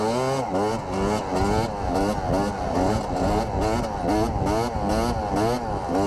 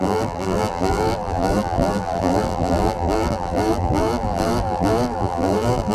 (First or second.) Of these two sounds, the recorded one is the first